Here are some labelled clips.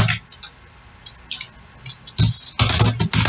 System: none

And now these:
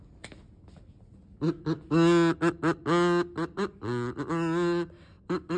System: none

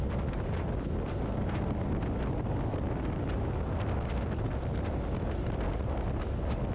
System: none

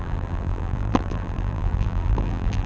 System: vocoder, BigVGAN v2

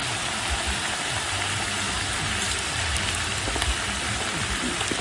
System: none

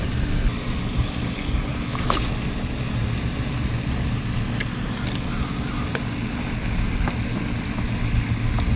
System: none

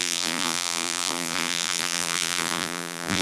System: vocoder, BigVGAN v2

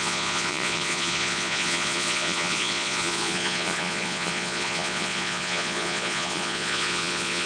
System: vocoder, Vocos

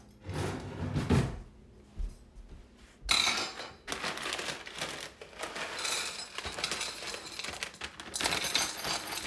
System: none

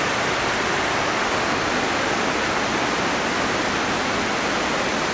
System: none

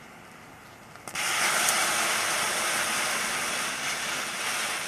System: none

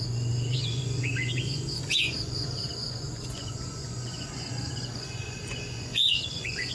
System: vocoder, Vocos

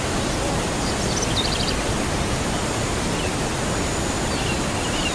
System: none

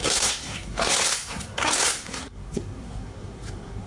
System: codec, SNAC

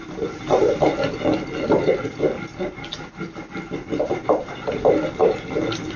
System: none